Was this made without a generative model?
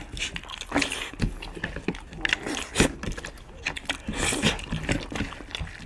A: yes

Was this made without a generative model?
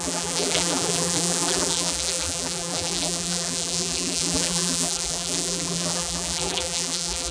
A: no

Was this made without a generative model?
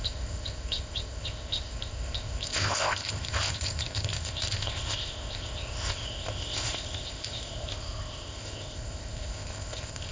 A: no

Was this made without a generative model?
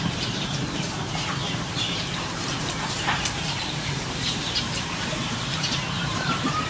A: no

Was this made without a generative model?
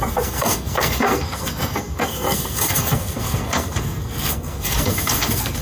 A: no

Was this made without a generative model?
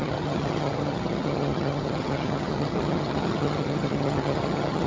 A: no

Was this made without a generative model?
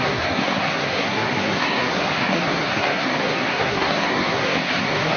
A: no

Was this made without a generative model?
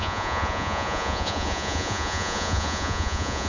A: no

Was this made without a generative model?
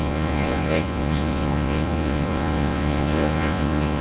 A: no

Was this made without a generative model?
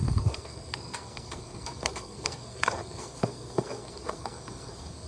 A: no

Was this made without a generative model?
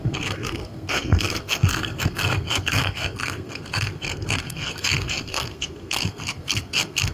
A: no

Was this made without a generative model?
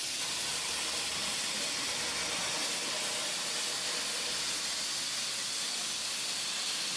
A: yes